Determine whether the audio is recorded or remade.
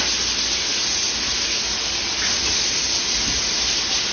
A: recorded